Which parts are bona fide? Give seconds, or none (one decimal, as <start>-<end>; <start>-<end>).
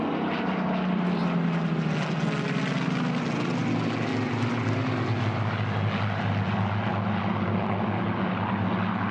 0.0-9.1